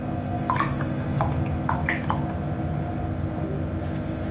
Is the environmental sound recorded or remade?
recorded